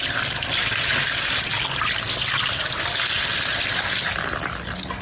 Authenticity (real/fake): real